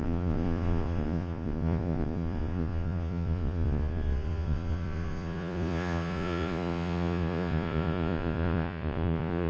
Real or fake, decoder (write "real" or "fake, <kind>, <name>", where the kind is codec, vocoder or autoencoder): fake, vocoder, Vocos